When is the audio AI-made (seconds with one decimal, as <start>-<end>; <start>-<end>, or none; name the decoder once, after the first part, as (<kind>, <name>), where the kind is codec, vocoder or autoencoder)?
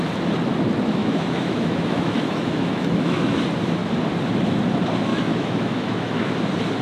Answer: 1.0-3.4 (autoencoder, DAC-VAE); 5.1-6.2